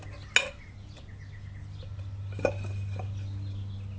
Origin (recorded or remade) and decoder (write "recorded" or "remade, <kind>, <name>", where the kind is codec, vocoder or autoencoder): recorded